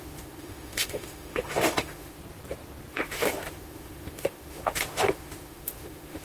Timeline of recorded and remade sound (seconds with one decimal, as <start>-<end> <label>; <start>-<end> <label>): 0.0-2.2 remade; 2.2-2.9 recorded; 2.9-6.2 remade